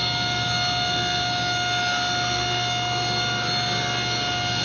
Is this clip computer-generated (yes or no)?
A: no